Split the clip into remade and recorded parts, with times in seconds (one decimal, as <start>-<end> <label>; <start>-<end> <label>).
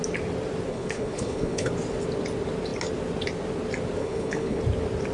0.0-0.7 recorded; 0.7-1.7 remade; 1.7-4.0 recorded; 4.0-4.6 remade; 4.6-5.1 recorded